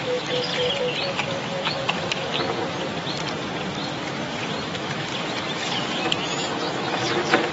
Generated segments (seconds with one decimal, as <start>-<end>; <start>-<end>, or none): 0.0-0.5; 1.1-2.3; 4.6-5.1; 5.9-7.5